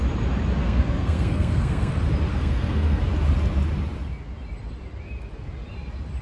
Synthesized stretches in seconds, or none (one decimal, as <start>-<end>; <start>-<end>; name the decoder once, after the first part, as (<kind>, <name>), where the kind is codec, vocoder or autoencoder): 0.6-1.9 (codec, SNAC); 2.3-3.0